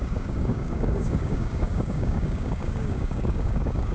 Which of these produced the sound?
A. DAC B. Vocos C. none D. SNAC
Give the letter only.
A